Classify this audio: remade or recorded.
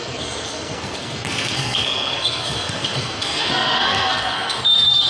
remade